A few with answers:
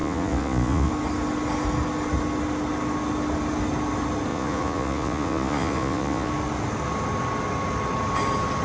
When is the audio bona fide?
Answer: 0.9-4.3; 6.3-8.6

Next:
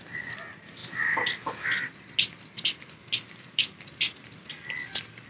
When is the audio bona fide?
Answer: 0.0-5.3

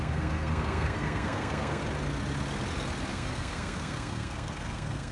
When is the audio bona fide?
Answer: 1.8-3.1

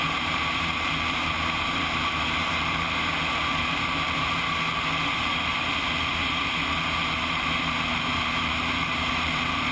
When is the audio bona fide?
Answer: 5.5-7.0

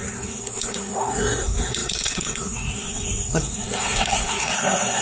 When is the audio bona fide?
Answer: none

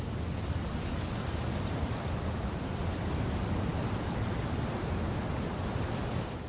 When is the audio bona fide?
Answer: 0.0-3.7; 5.2-6.5

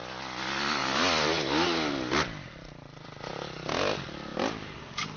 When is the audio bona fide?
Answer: 0.0-5.2

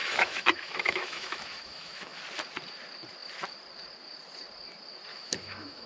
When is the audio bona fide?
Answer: 2.2-5.1